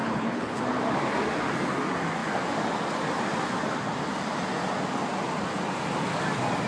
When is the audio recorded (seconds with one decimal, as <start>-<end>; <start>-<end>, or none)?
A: 0.6-6.7